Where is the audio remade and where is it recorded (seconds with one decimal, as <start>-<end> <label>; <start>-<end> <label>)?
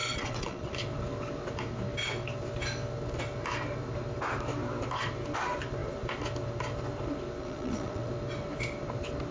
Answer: 0.0-0.7 remade; 0.7-7.4 recorded; 7.4-8.1 remade; 8.1-9.3 recorded